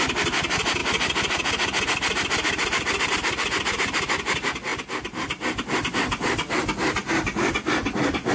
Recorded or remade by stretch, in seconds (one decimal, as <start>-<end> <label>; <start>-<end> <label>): 0.0-8.3 recorded